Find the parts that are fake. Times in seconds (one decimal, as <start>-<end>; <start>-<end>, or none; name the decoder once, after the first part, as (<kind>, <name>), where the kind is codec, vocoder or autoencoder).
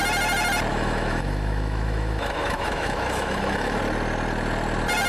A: 0.7-3.8 (autoencoder, DAC-VAE)